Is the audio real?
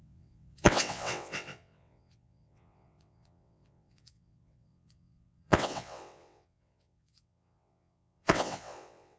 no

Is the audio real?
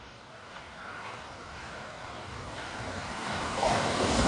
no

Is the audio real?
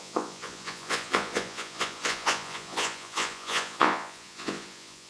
no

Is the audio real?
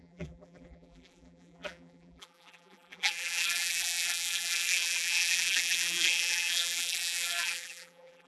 no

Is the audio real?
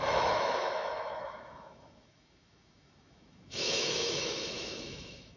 no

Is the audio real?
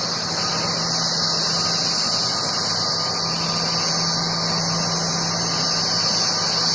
yes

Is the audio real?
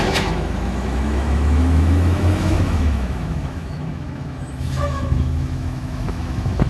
no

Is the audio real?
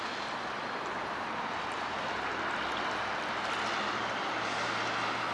yes